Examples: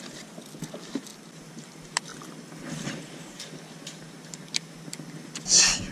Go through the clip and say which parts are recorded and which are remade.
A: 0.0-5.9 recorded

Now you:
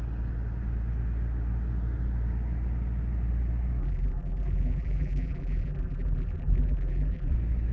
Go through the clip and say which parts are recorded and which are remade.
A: 0.0-3.8 recorded; 3.8-7.3 remade; 7.3-7.7 recorded

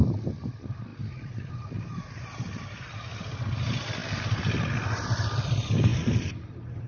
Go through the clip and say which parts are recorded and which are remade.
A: 0.0-6.9 recorded

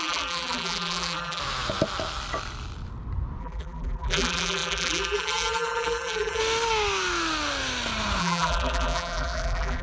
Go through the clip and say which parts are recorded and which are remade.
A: 0.0-1.4 remade; 1.4-3.4 recorded; 3.4-6.4 remade; 6.4-8.2 recorded; 8.2-9.8 remade

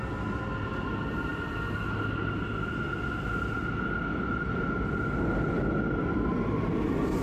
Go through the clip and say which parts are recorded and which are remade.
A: 0.0-7.2 recorded

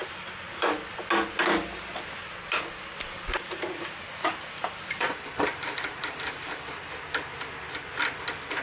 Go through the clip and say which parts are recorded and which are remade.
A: 0.0-4.2 recorded; 4.2-6.9 remade; 6.9-8.6 recorded

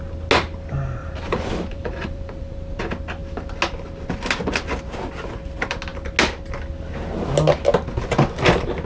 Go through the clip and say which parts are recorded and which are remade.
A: 0.0-1.0 recorded; 1.0-2.8 remade; 2.8-8.9 recorded